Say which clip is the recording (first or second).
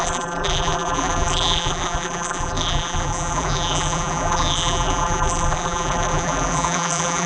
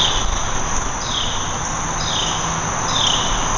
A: second